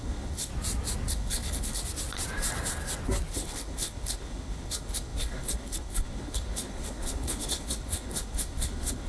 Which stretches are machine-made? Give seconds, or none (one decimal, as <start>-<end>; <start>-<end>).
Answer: 0.0-0.5; 1.1-1.8; 3.3-9.1